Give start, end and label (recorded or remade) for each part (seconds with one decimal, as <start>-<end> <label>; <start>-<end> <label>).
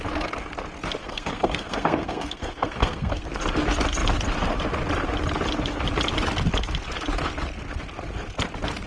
0.0-1.0 recorded; 1.0-3.2 remade; 3.2-8.9 recorded